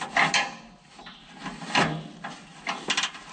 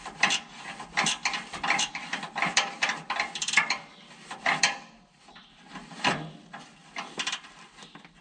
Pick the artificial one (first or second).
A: second